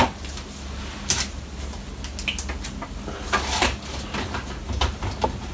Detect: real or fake real